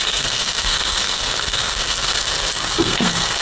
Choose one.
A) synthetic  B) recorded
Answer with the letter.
A